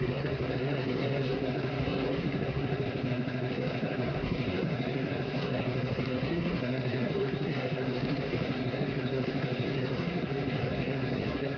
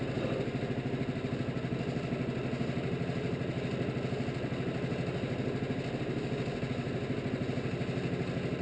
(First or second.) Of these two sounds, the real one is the second